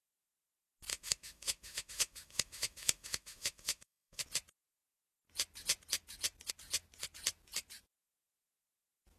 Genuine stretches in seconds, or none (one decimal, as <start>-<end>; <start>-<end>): 0.0-0.9; 4.2-9.2